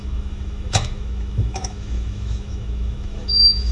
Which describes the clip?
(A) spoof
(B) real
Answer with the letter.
A